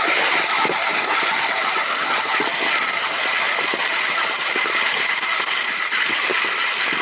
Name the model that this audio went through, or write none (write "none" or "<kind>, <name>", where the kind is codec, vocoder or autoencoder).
none